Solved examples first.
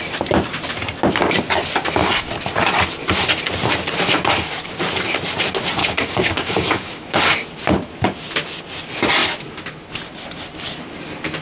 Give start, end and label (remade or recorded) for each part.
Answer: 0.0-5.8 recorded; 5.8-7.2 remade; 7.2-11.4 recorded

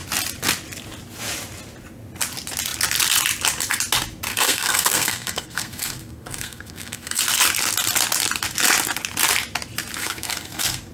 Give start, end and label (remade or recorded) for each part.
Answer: 0.0-4.3 recorded; 4.3-7.2 remade; 7.2-10.0 recorded; 10.0-10.9 remade

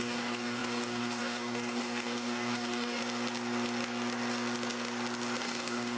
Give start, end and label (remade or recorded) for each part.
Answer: 0.0-3.0 remade; 3.0-5.4 recorded; 5.4-6.0 remade

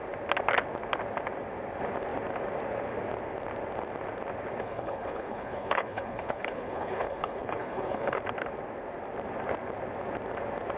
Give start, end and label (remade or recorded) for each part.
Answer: 0.0-4.6 recorded; 4.6-8.2 remade; 8.2-10.8 recorded

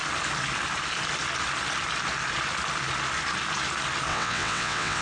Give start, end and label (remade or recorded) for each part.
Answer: 0.0-4.1 recorded; 4.1-5.0 remade

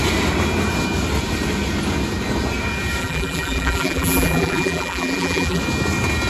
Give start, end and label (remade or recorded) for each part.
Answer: 0.0-3.0 recorded; 3.0-5.6 remade; 5.6-6.3 recorded